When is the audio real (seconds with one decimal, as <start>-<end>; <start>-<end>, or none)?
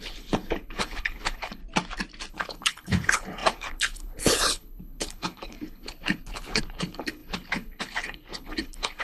1.6-2.3